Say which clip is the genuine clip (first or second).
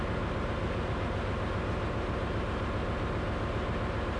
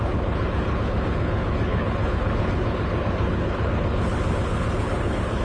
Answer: first